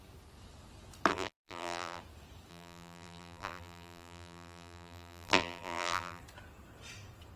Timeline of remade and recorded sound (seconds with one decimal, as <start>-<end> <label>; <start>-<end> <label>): 0.0-1.1 recorded; 1.1-2.0 remade; 2.0-2.5 recorded; 2.5-6.2 remade; 6.2-7.4 recorded